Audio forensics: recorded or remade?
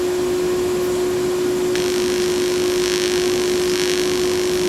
recorded